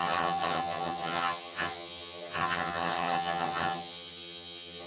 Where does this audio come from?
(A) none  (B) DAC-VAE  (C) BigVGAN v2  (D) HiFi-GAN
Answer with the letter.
D